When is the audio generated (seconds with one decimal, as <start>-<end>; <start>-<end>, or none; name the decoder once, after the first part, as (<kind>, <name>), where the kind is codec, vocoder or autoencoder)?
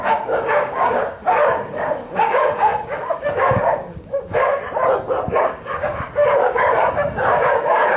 0.0-4.5 (codec, DAC); 5.4-8.0